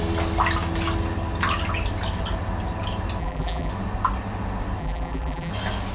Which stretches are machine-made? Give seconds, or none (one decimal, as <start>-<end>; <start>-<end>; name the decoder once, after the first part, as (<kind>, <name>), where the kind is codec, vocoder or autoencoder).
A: 3.2-3.7 (vocoder, BigVGAN v2); 4.8-5.5